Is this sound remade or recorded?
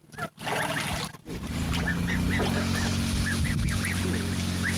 recorded